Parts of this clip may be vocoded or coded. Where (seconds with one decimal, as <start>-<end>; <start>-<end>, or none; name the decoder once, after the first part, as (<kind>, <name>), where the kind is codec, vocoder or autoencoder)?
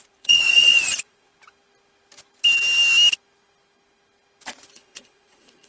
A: 0.0-1.3 (vocoder, Vocos); 4.7-5.7